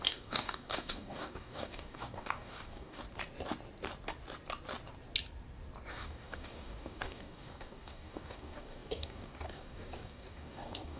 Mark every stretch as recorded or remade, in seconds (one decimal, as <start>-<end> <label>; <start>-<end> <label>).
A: 0.0-3.0 remade; 3.0-5.9 recorded; 5.9-11.0 remade